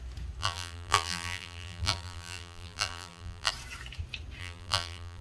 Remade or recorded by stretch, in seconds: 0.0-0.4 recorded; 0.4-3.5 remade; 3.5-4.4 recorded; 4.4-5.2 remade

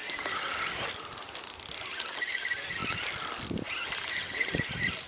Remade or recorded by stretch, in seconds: 0.0-5.1 recorded

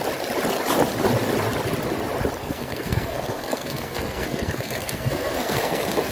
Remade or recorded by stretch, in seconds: 0.0-2.4 recorded; 2.4-6.1 remade

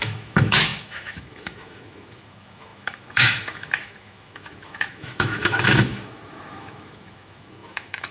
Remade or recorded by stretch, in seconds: 0.0-8.1 remade

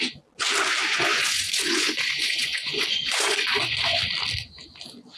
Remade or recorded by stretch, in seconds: 0.0-0.9 recorded; 0.9-4.0 remade; 4.0-5.2 recorded